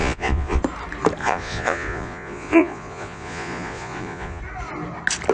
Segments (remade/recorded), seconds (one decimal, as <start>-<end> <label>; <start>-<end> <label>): 0.0-0.6 remade; 0.6-1.2 recorded; 1.2-4.4 remade; 4.4-5.3 recorded